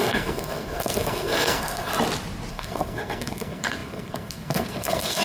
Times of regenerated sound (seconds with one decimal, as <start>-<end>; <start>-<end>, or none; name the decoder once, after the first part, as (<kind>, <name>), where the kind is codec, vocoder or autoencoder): 0.0-1.9 (codec, SNAC); 2.5-5.2